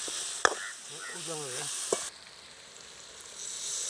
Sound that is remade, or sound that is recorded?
recorded